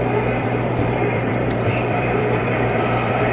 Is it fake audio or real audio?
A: fake